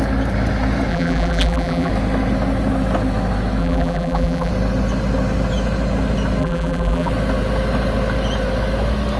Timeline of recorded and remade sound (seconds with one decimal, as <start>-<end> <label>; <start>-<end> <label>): 0.0-0.9 recorded; 0.9-1.9 remade; 1.9-3.6 recorded; 3.6-4.5 remade; 4.5-6.4 recorded; 6.4-7.1 remade; 7.1-9.2 recorded